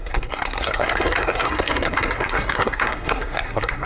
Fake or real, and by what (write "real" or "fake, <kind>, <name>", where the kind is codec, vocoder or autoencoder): fake, codec, SNAC